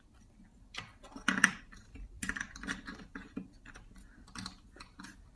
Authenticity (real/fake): real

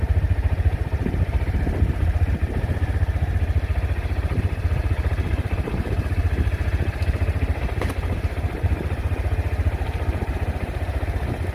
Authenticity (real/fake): fake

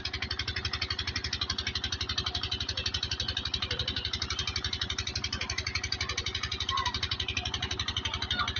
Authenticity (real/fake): real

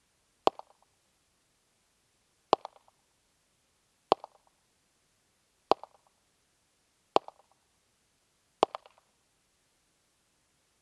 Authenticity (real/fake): real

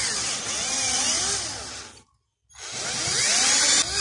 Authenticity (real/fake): real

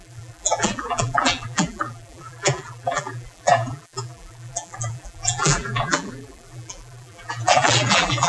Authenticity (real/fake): fake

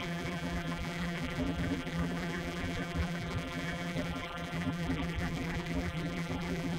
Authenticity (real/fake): fake